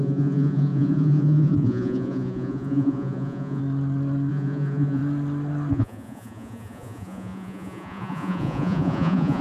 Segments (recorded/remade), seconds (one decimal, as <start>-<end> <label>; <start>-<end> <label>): 0.0-3.6 remade; 3.6-4.3 recorded; 4.3-5.0 remade; 5.0-5.7 recorded; 5.7-9.4 remade